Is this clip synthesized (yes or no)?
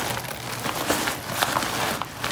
no